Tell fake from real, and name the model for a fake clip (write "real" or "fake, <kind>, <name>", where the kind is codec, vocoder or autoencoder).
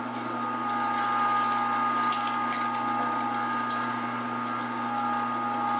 real